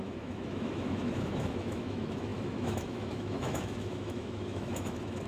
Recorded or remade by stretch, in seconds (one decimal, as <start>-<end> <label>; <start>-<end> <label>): 0.0-5.3 remade